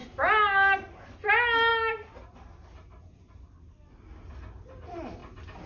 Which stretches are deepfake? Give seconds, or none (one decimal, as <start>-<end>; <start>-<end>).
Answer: none